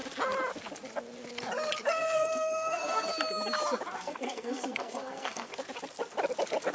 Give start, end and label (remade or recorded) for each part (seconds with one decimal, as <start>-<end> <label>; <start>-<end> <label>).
0.0-1.9 recorded; 1.9-3.1 remade; 3.1-4.0 recorded; 4.0-5.5 remade; 5.5-6.7 recorded